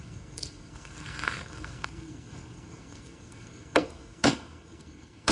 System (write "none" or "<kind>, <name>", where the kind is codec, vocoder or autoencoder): codec, SNAC